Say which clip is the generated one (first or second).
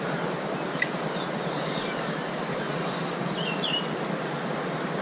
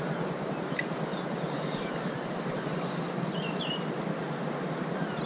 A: second